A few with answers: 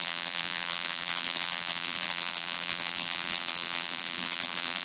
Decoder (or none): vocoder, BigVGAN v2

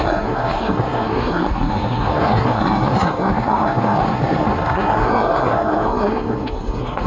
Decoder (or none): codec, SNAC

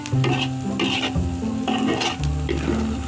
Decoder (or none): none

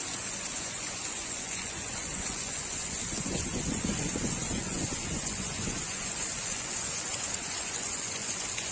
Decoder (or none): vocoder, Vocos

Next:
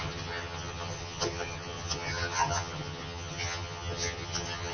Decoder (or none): vocoder, HiFi-GAN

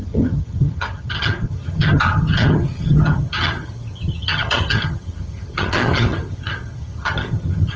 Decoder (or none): vocoder, HiFi-GAN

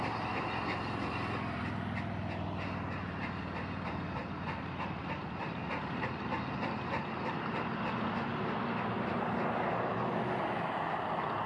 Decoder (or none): none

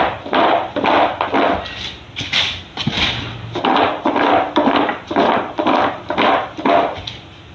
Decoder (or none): none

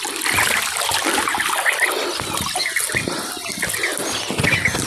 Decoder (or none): none